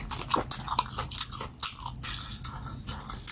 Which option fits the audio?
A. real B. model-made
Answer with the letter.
A